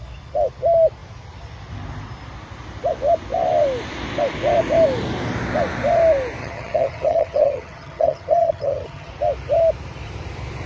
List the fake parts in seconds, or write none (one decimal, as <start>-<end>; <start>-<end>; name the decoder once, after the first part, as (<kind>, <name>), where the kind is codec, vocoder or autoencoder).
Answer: 6.4-9.1 (vocoder, HiFi-GAN)